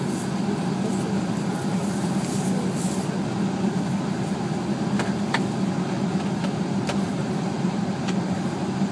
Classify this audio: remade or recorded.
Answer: recorded